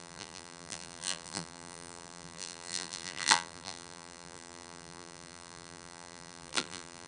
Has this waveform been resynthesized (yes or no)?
yes